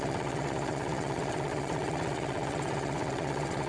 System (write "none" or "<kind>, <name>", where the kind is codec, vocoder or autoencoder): vocoder, WaveNeXt